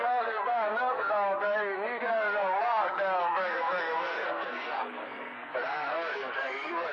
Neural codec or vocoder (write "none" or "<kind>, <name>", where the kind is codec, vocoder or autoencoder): codec, SNAC